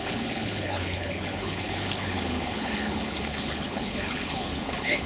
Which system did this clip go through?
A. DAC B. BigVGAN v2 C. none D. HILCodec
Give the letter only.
D